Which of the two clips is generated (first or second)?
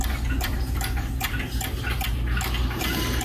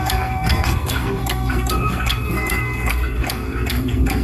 second